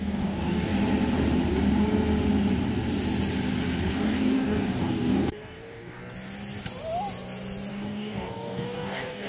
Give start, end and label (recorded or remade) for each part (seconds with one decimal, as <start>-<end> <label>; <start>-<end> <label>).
0.0-0.7 remade; 0.7-3.9 recorded; 3.9-6.0 remade; 6.0-7.7 recorded; 7.7-9.3 remade